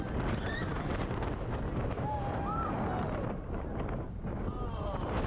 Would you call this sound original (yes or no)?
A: yes